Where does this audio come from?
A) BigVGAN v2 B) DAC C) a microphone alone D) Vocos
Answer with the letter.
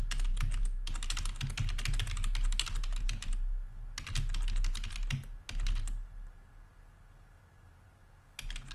C